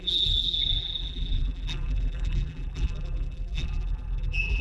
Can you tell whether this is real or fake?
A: fake